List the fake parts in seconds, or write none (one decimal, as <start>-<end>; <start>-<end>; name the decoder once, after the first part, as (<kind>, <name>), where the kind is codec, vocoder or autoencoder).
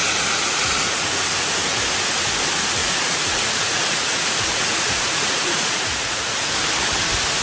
0.0-1.1 (vocoder, Vocos); 2.8-6.5